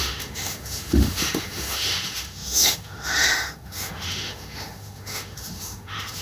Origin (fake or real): fake